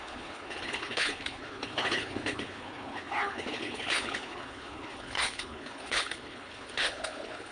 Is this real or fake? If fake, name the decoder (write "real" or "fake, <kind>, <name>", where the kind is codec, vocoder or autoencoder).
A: fake, codec, HILCodec